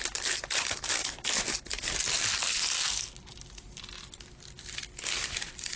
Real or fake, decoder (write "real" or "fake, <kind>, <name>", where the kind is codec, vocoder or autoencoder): real